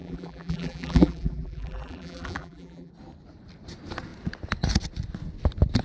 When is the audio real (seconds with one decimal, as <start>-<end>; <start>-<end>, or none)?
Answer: 2.9-5.8